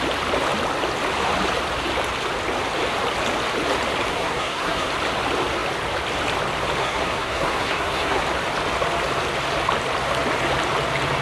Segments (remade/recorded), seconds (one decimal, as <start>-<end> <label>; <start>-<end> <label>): 0.0-4.1 recorded; 4.1-4.9 remade; 4.9-6.8 recorded; 6.8-8.2 remade; 8.2-11.2 recorded